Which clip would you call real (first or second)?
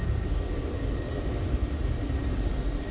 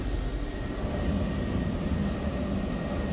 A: second